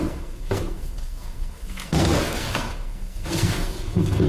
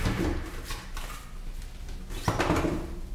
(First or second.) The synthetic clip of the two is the first